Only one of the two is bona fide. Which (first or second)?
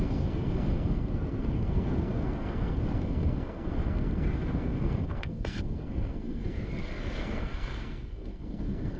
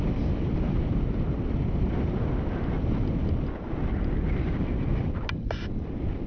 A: second